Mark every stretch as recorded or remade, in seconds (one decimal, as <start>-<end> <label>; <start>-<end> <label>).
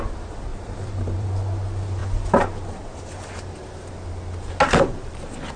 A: 0.0-0.5 recorded; 0.5-1.3 remade; 1.3-5.6 recorded